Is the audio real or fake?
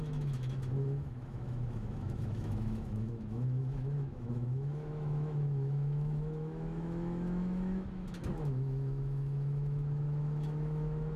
fake